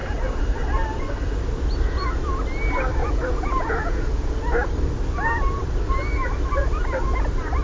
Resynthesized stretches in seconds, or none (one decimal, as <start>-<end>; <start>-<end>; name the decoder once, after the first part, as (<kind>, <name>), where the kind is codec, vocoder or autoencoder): 3.0-4.4 (vocoder, Vocos)